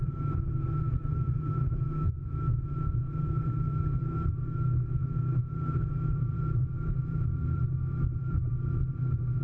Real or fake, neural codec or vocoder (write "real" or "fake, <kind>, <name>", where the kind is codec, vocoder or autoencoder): fake, vocoder, BigVGAN v2